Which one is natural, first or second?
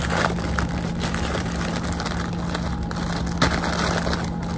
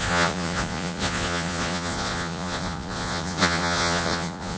first